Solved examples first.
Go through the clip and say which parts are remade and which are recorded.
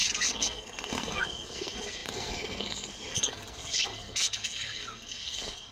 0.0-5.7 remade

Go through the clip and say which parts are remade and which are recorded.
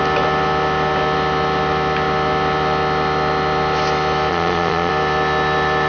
0.0-4.3 recorded; 4.3-4.9 remade; 4.9-5.9 recorded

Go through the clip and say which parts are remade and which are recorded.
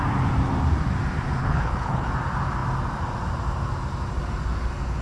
0.0-1.4 recorded; 1.4-2.1 remade; 2.1-5.0 recorded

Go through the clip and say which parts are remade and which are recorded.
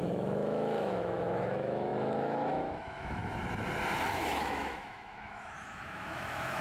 0.0-3.2 remade; 3.2-4.1 recorded; 4.1-6.6 remade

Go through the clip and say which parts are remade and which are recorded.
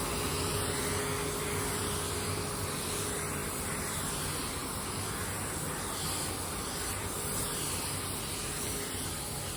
0.0-3.4 recorded; 3.4-4.0 remade; 4.0-9.6 recorded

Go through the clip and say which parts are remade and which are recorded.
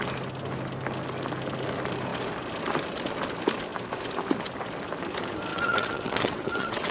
0.0-5.5 recorded; 5.5-6.9 remade